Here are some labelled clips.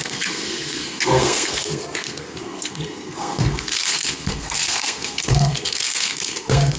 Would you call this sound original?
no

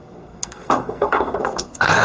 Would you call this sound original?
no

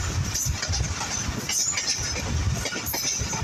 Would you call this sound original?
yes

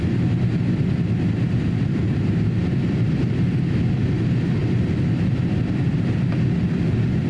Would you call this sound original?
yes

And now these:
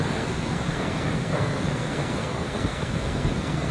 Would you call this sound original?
no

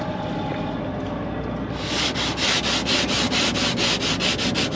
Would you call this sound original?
yes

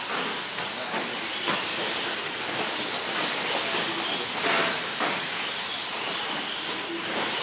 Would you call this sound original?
yes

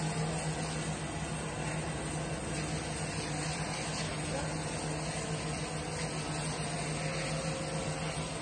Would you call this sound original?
yes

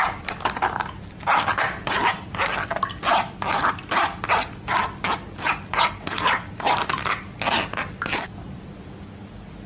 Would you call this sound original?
yes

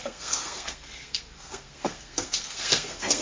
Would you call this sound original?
no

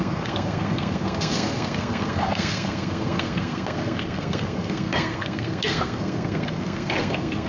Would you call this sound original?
no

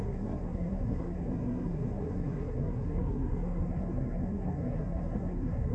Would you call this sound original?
no